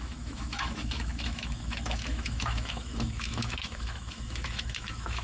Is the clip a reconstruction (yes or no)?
yes